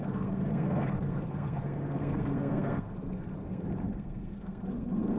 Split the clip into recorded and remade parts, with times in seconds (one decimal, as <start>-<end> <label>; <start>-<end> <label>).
0.0-5.2 remade